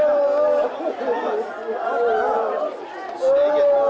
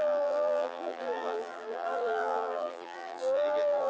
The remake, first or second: second